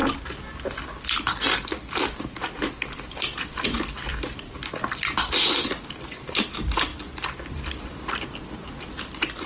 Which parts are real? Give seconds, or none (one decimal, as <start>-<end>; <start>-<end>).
0.0-2.0